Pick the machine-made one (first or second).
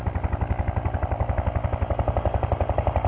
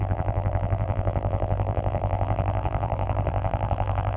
second